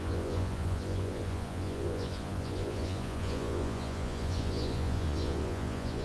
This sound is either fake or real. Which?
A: fake